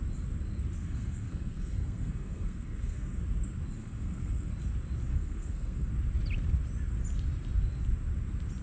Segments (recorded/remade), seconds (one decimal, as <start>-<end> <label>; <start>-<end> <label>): 0.0-0.8 recorded; 0.8-3.2 remade; 3.2-3.8 recorded; 3.8-4.5 remade; 4.5-5.1 recorded; 5.1-5.9 remade; 5.9-8.6 recorded